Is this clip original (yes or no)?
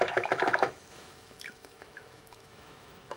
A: no